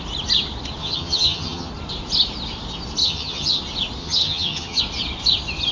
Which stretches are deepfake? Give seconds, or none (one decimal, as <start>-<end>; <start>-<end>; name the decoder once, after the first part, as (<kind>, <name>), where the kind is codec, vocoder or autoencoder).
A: 0.8-1.7 (vocoder, HiFi-GAN); 3.0-3.6; 4.0-4.8